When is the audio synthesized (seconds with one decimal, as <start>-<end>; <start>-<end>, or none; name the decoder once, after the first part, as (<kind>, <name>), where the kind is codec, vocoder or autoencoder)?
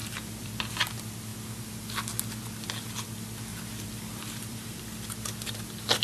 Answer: 0.0-0.7 (vocoder, BigVGAN v2); 3.5-4.8